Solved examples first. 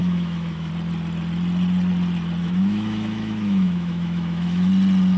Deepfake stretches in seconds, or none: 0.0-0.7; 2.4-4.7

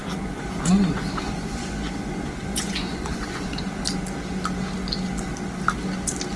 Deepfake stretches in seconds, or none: 0.0-3.8